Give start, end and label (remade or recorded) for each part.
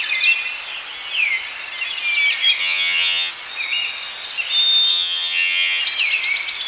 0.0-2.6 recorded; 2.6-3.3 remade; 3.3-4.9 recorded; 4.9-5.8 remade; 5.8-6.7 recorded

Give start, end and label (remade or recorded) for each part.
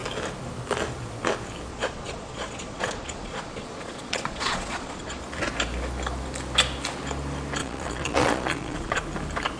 0.0-1.7 recorded; 1.7-5.2 remade; 5.2-7.6 recorded; 7.6-9.0 remade; 9.0-9.6 recorded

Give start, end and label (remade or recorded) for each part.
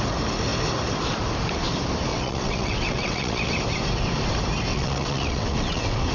0.0-2.1 recorded; 2.1-3.5 remade; 3.5-4.7 recorded; 4.7-6.1 remade